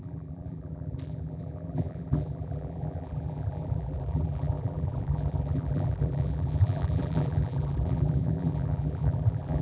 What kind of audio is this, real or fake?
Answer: fake